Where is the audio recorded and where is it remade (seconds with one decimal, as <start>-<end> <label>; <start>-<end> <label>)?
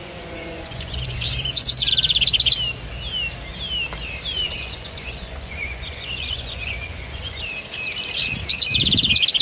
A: 0.0-1.9 remade; 1.9-4.3 recorded; 4.3-7.4 remade; 7.4-9.4 recorded